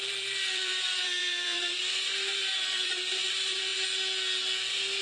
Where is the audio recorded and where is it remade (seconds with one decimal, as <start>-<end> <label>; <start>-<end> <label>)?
0.0-3.7 remade; 3.7-5.0 recorded